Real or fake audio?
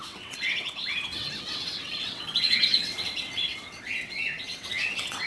fake